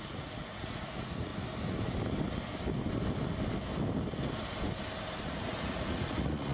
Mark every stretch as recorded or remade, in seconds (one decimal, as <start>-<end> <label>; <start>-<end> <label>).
0.0-1.3 remade; 1.3-5.2 recorded; 5.2-6.5 remade